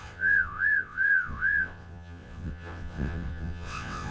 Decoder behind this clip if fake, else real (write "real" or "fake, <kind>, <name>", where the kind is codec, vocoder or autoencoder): fake, vocoder, WaveNeXt